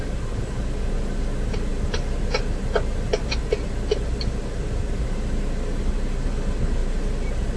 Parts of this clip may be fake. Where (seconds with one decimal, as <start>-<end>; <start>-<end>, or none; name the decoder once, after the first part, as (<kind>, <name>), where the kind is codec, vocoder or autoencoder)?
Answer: none